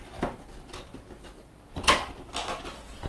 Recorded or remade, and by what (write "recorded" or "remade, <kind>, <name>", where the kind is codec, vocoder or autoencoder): recorded